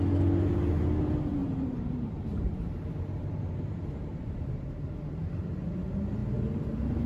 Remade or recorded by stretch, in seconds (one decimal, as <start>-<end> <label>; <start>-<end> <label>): 0.0-1.4 recorded; 1.4-5.7 remade; 5.7-7.1 recorded